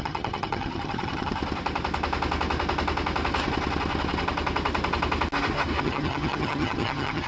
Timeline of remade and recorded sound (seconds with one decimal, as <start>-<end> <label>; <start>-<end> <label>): 0.0-1.4 remade; 1.4-5.8 recorded; 5.8-7.3 remade